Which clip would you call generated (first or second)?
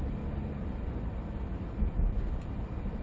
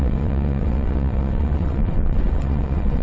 second